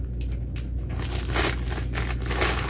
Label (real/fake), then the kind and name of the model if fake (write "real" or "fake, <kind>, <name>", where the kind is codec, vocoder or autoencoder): real